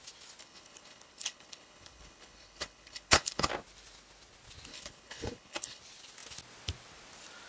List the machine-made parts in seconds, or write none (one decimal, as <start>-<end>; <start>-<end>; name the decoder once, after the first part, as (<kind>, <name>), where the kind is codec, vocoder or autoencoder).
0.4-3.5 (codec, HILCodec); 4.7-5.8